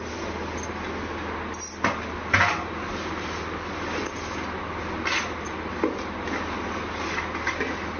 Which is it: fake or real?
real